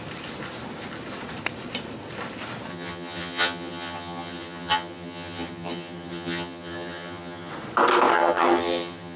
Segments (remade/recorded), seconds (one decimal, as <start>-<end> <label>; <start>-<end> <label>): 0.0-2.7 recorded; 2.7-7.5 remade; 7.5-8.1 recorded; 8.1-9.2 remade